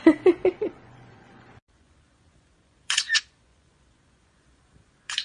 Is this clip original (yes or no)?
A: no